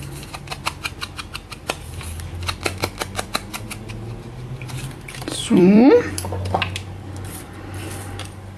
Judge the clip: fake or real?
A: fake